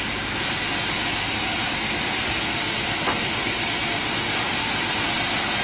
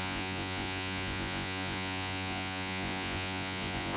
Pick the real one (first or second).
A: first